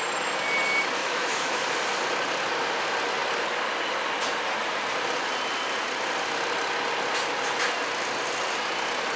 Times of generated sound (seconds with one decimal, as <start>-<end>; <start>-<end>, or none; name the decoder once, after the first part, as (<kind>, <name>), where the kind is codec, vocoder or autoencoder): 1.0-1.6 (autoencoder, DAC-VAE)